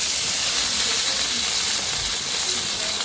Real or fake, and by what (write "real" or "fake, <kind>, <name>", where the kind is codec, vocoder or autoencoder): real